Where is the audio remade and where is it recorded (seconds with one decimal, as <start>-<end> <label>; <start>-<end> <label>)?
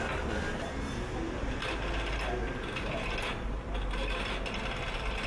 0.0-2.4 recorded; 2.4-3.1 remade; 3.1-5.3 recorded